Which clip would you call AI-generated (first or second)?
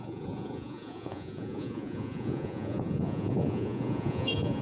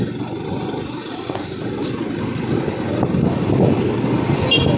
first